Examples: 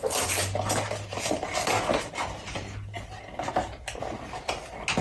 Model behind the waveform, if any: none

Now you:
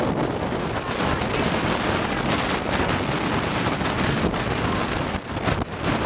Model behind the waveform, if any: none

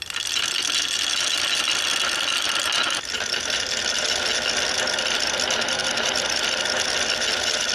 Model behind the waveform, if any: none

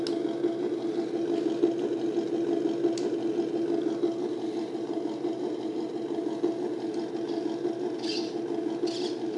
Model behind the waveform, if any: none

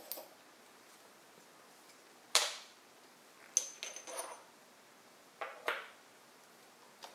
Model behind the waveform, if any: none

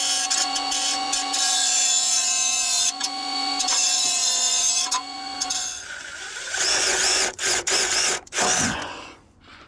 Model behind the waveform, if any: vocoder, Vocos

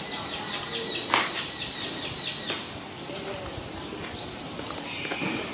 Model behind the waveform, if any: none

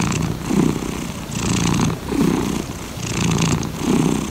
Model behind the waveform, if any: none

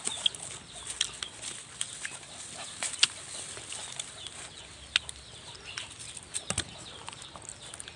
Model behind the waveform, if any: none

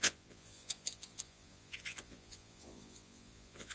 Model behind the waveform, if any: vocoder, Vocos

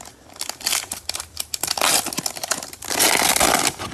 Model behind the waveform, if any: none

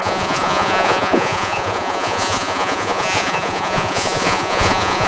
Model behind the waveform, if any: vocoder, Vocos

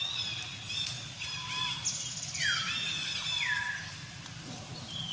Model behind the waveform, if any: none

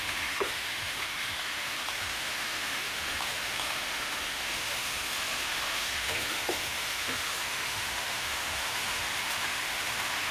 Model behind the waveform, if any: autoencoder, DAC-VAE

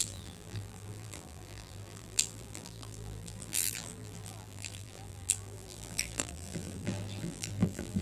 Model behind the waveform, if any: vocoder, BigVGAN v2